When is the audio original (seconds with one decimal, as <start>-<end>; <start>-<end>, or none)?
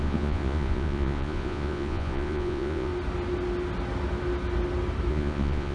2.9-5.1